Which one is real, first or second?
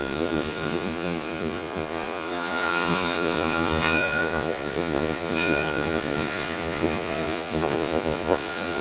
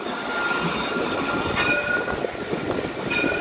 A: second